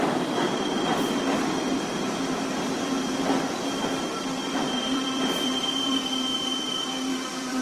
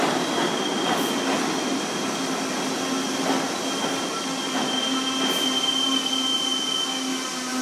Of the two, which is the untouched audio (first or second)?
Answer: second